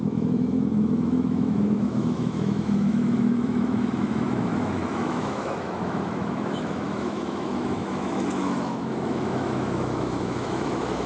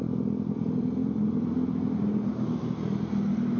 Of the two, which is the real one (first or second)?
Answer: second